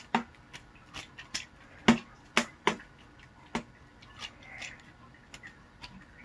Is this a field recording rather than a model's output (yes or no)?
yes